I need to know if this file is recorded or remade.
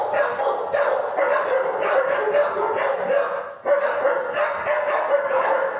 recorded